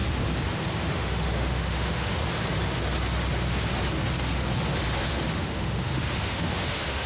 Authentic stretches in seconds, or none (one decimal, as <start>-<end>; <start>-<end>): 0.0-0.9; 2.2-5.0